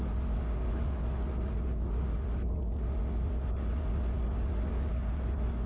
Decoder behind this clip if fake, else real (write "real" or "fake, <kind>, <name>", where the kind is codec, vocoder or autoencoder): real